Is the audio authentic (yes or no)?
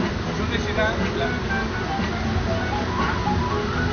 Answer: yes